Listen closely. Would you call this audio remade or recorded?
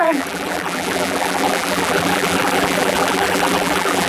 remade